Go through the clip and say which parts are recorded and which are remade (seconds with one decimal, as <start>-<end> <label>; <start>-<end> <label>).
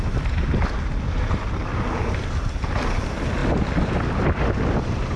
0.0-3.4 remade; 3.4-4.1 recorded; 4.1-5.2 remade